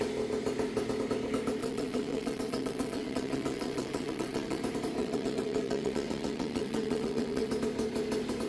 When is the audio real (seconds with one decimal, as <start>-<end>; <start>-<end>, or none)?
0.0-1.6; 4.6-5.0; 7.5-8.5